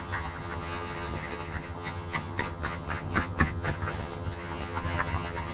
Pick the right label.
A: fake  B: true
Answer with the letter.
A